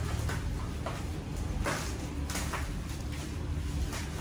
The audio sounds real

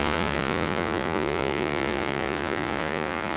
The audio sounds fake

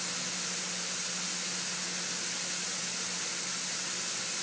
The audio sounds real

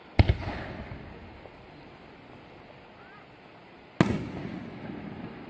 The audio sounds real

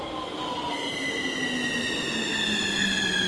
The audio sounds real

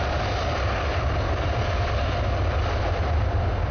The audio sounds real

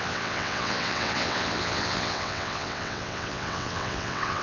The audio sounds fake